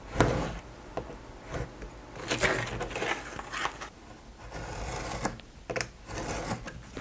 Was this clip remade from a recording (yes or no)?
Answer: no